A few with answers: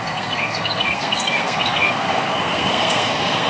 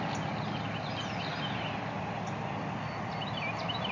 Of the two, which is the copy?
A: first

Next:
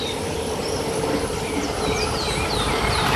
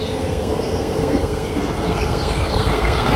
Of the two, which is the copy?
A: second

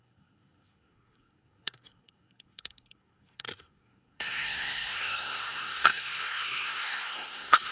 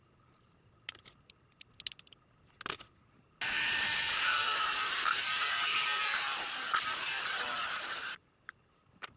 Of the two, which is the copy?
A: first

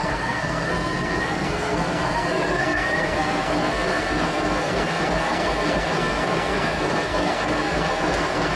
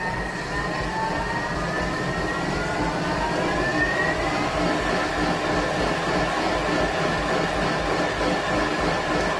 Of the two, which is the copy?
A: first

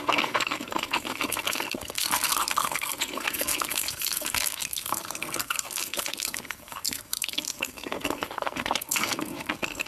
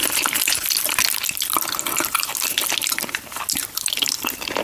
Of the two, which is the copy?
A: first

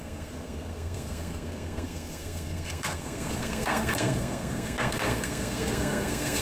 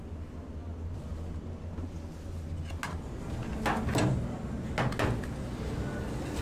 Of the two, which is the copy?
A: first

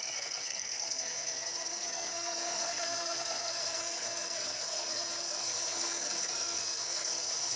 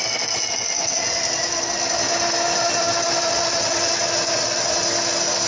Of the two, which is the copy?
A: first